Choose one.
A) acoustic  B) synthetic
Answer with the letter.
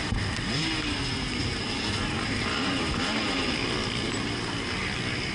A